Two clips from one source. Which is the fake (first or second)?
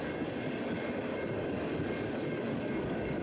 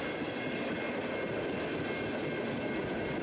first